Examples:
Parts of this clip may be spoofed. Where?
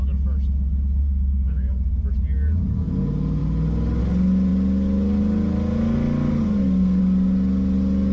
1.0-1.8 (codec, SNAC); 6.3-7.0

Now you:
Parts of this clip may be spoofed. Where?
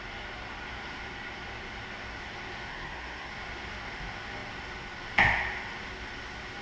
2.7-3.3 (codec, SNAC)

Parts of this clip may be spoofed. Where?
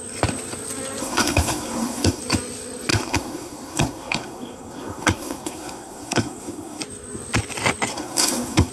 1.0-2.2 (codec, SNAC); 2.9-6.8; 7.9-8.7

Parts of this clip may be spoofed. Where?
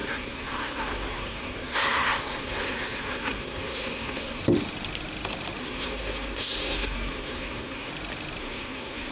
0.0-4.4 (codec, SNAC); 5.6-7.9; 8.4-9.1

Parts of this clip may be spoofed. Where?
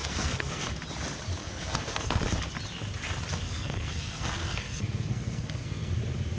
0.0-0.7 (codec, SNAC); 1.4-2.2; 3.3-5.9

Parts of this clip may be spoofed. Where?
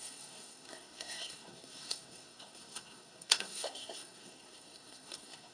0.0-5.5 (codec, SNAC)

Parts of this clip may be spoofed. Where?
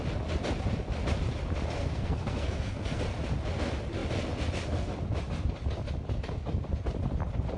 1.8-3.0 (codec, SNAC)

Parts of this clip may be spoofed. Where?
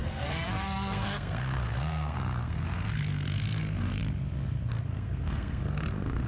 0.0-4.0 (codec, SNAC); 4.7-6.3